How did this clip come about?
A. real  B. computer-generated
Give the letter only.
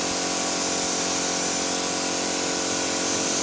A